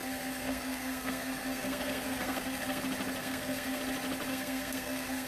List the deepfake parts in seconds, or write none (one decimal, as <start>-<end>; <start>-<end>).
0.0-2.8; 3.2-3.8; 4.3-5.3